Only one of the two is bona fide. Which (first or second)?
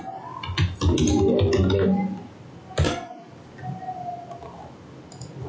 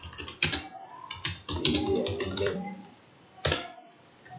first